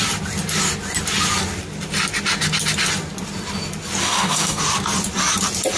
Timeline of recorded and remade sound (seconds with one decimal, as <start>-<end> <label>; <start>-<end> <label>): 0.0-4.0 recorded; 4.0-4.6 remade; 4.6-5.8 recorded